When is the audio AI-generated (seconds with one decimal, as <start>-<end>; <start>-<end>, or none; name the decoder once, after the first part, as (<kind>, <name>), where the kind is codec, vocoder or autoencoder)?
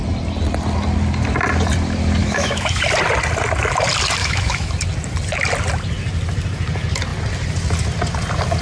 2.2-2.8 (autoencoder, DAC-VAE); 4.2-4.7